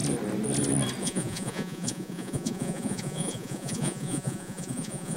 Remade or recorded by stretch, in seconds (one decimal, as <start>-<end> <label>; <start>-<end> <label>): 0.0-1.0 recorded; 1.0-5.2 remade